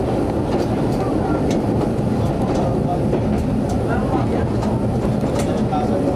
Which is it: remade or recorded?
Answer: recorded